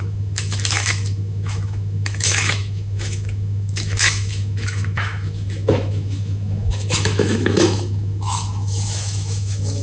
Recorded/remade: remade